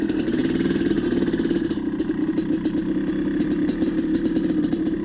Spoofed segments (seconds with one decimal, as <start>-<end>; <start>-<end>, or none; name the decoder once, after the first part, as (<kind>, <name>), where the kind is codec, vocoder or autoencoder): 0.0-0.4 (vocoder, BigVGAN v2); 3.4-5.0